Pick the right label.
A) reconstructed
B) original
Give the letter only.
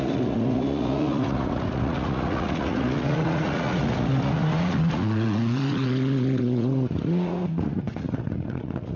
A